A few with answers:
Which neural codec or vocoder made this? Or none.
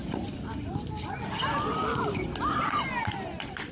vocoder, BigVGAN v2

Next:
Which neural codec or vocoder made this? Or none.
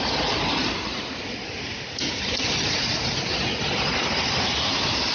none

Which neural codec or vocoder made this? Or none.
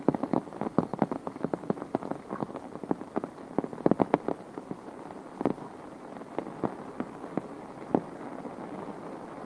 none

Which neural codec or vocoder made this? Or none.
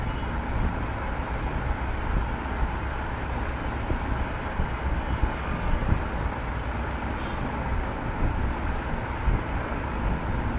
none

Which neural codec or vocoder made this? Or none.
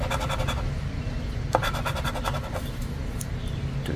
none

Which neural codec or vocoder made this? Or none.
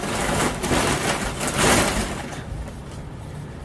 none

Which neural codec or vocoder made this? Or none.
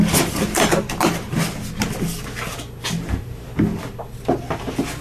none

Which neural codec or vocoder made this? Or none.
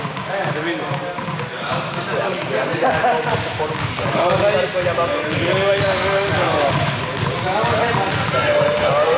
none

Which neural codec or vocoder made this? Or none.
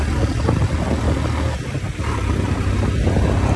none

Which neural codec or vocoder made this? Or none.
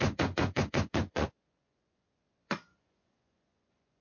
vocoder, Vocos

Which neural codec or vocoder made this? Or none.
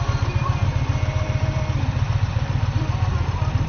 vocoder, BigVGAN v2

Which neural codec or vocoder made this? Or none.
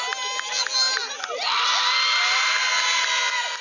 none